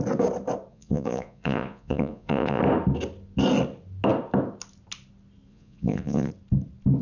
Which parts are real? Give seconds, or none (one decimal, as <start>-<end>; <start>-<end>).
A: 0.0-0.7; 2.6-5.5; 6.3-7.0